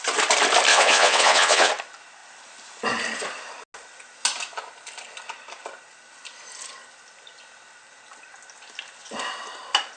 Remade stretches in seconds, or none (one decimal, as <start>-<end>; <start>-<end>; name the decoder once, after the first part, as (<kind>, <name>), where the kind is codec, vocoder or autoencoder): 0.7-1.7 (vocoder, WaveNeXt)